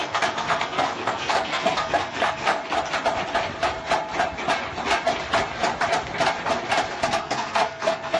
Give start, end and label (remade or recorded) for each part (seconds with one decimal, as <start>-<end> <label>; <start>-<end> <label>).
0.0-2.6 remade; 2.6-6.9 recorded; 6.9-8.2 remade